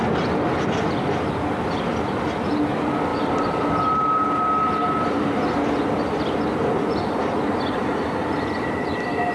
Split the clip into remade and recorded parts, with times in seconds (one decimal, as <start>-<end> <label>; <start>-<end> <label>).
0.0-9.3 recorded